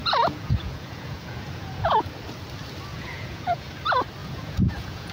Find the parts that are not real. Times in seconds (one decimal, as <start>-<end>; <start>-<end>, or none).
0.0-2.1; 2.9-3.7; 4.2-5.1